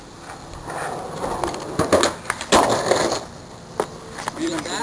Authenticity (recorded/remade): recorded